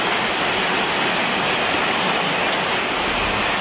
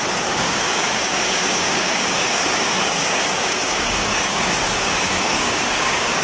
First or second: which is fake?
second